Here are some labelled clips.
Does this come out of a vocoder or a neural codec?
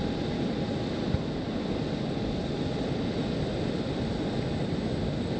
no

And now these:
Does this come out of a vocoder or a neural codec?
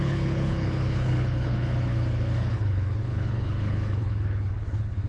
yes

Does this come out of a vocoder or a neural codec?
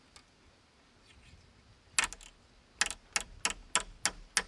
no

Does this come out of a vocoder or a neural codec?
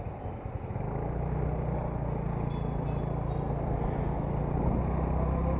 no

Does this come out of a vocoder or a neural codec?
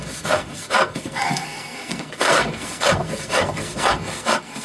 yes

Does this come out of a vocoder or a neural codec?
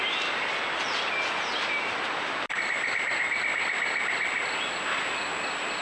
no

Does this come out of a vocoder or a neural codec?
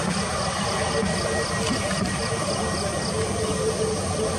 no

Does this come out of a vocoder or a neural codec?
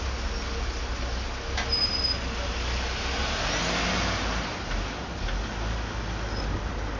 no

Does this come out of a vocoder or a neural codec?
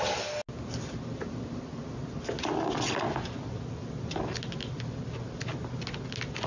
no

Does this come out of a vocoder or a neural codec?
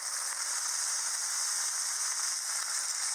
no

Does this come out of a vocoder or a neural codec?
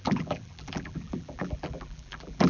yes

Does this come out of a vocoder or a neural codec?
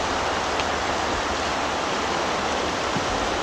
no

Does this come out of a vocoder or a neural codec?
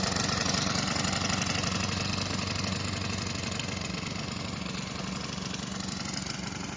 no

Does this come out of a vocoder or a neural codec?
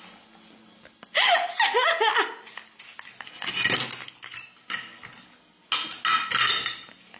no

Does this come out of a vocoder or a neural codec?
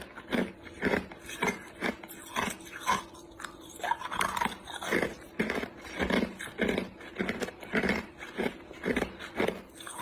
no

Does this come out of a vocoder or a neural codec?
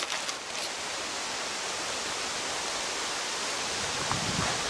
no